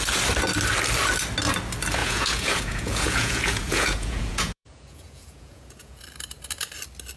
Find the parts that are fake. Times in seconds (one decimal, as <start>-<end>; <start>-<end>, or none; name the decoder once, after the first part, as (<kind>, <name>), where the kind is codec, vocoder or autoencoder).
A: 2.0-6.0 (vocoder, Vocos)